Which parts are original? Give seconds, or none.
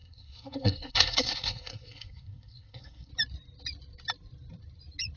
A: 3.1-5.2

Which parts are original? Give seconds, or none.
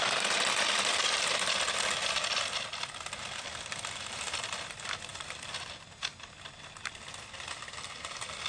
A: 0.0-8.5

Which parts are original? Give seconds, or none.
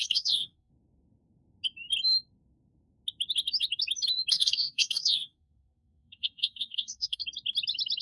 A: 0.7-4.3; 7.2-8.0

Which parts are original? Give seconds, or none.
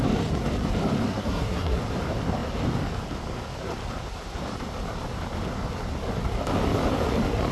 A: 0.0-1.1; 1.8-7.5